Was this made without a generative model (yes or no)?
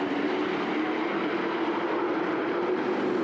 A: no